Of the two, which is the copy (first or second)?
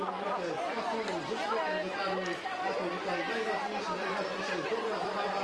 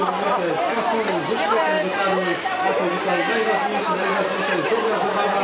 first